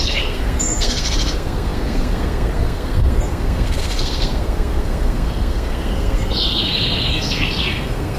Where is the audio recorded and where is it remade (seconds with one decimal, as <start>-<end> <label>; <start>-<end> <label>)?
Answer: 0.0-8.2 remade